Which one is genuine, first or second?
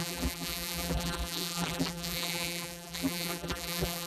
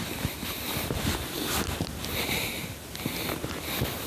second